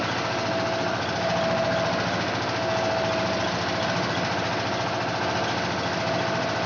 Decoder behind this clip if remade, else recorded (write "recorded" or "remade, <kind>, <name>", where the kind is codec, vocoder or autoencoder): recorded